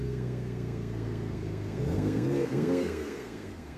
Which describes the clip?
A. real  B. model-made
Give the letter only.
B